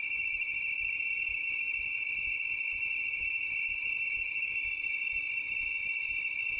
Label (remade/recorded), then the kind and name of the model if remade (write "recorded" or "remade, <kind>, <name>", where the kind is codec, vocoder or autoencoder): recorded